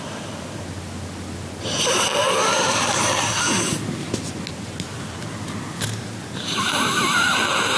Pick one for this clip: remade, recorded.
recorded